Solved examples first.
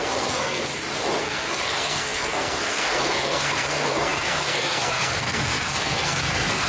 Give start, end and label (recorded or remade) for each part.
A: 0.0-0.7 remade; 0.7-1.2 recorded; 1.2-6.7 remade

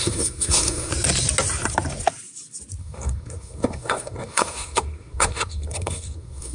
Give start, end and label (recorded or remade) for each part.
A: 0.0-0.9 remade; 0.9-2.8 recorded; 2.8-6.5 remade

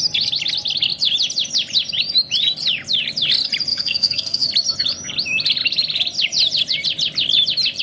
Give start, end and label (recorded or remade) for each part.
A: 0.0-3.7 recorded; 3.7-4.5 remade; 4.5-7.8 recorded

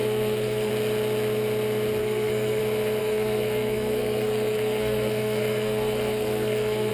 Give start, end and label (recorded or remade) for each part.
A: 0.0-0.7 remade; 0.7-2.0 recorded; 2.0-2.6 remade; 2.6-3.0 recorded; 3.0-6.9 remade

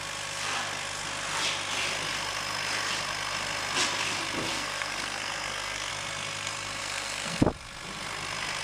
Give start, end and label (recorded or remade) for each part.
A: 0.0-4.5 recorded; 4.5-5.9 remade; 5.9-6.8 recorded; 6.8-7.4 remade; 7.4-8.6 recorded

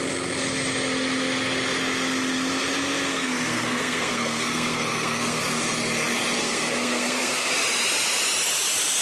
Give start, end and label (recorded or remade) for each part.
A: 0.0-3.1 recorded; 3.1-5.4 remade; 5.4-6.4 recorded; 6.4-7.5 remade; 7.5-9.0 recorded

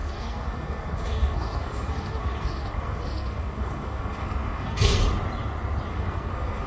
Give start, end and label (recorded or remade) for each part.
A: 0.0-5.0 remade; 5.0-5.9 recorded; 5.9-6.7 remade